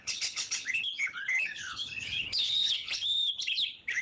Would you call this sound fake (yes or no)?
yes